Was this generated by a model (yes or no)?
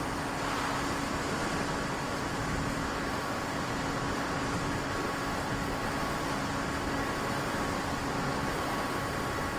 no